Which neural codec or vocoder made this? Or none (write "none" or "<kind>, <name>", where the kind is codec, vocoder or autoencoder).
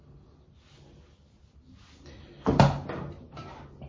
none